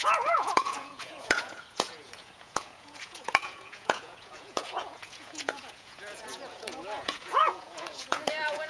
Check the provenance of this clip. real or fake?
fake